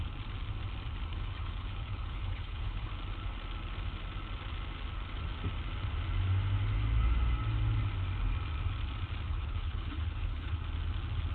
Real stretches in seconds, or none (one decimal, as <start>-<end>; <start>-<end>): 0.0-1.1; 2.9-9.3; 10.6-11.3